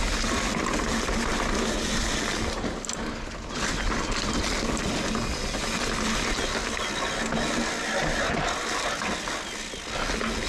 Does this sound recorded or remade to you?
recorded